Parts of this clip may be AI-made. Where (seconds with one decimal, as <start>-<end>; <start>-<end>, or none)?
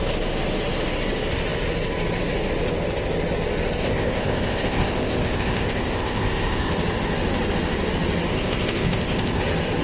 3.8-6.7; 8.3-9.4